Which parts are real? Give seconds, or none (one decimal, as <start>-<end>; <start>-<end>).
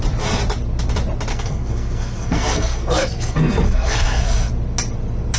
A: 0.0-1.3; 4.5-5.4